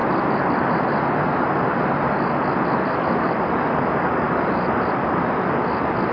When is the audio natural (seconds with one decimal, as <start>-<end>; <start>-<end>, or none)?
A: 0.0-6.1